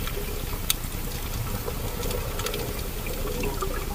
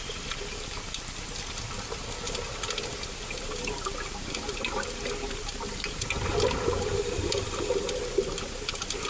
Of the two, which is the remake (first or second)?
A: second